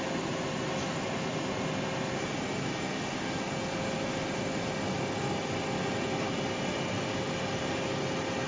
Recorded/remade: recorded